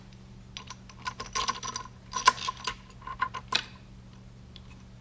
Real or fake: real